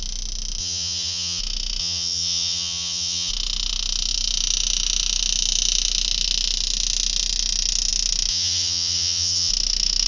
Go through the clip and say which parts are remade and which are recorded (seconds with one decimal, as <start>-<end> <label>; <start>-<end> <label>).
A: 0.0-0.6 recorded; 0.6-1.4 remade; 1.4-1.8 recorded; 1.8-3.3 remade; 3.3-8.3 recorded; 8.3-9.5 remade; 9.5-10.1 recorded